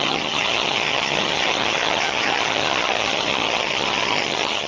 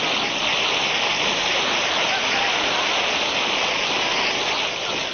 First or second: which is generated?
first